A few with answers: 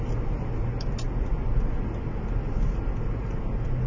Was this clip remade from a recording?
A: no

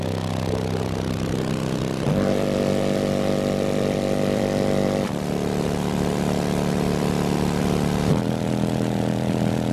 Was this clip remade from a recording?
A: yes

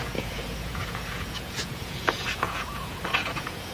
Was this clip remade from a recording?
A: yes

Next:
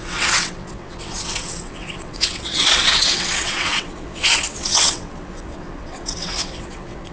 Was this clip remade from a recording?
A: yes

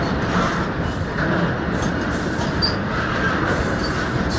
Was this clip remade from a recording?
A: yes